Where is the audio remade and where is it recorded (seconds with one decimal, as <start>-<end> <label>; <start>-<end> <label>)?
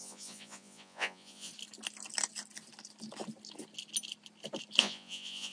0.0-1.5 remade; 1.5-4.8 recorded; 4.8-5.5 remade